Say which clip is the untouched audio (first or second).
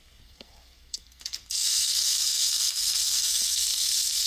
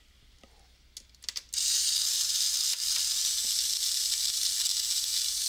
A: second